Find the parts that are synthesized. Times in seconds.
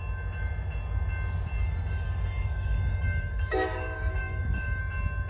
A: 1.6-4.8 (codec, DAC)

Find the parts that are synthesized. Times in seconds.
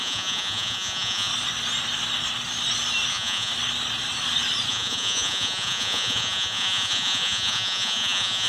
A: 0.0-1.3 (vocoder, Vocos); 3.1-3.5; 4.7-8.5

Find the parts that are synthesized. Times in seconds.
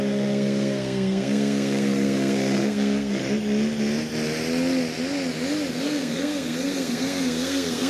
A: 0.0-3.2 (codec, SNAC); 5.7-7.9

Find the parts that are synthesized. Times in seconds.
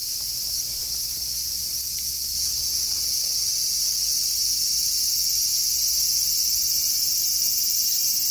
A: none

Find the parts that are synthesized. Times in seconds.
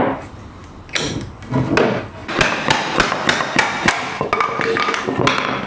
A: none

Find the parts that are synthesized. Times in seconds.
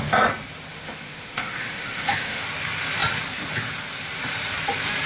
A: 0.7-2.4 (autoencoder, DAC-VAE)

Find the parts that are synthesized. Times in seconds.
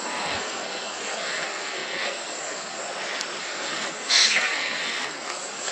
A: 0.0-2.8 (codec, SNAC); 3.4-5.7